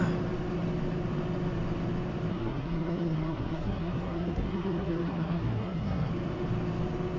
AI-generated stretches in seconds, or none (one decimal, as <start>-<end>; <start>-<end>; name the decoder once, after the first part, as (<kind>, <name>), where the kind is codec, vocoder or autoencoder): 2.3-6.1 (codec, SNAC)